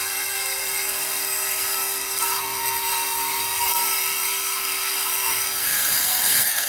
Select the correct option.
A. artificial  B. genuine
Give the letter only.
A